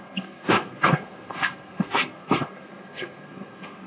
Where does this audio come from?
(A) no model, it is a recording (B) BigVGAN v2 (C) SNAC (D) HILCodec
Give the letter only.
C